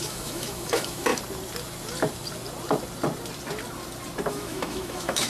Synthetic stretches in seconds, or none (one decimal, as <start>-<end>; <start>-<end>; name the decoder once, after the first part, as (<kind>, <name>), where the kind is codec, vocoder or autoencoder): 0.0-1.1 (autoencoder, DAC-VAE); 4.3-5.3